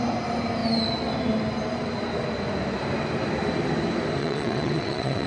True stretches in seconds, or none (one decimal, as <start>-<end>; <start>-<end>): 0.0-4.2